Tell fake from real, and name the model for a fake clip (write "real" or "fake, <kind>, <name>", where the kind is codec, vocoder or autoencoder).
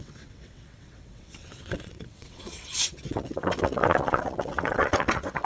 fake, vocoder, WaveNeXt